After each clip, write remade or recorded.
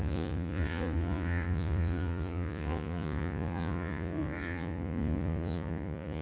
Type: remade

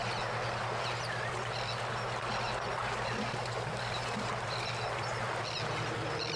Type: recorded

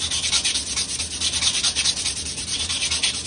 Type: recorded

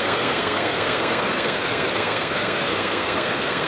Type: remade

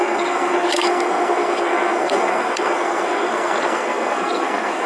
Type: remade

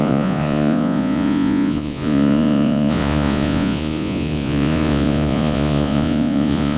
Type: remade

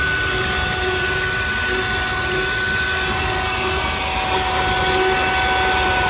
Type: recorded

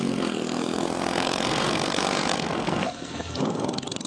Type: remade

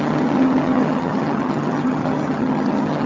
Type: remade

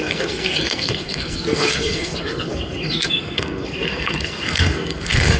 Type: remade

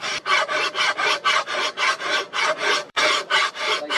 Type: remade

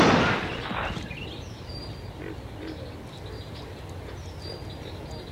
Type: recorded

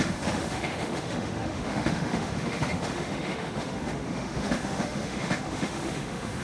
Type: remade